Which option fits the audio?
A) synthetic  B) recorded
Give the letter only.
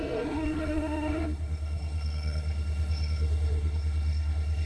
A